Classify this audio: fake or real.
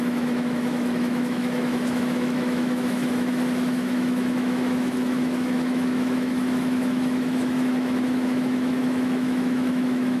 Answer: fake